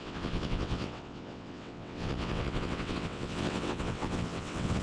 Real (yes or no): no